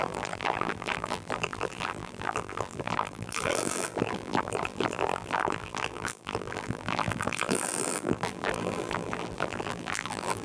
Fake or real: fake